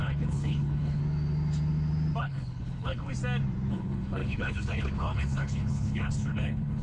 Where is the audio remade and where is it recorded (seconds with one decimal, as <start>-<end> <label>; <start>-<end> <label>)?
0.0-1.0 remade; 1.0-2.2 recorded; 2.2-3.1 remade; 3.1-3.7 recorded; 3.7-6.8 remade